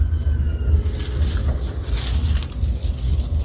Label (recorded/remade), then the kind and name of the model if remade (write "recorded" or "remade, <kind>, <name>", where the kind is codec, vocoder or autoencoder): recorded